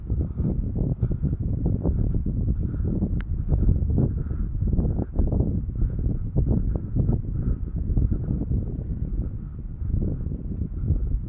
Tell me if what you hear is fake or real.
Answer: real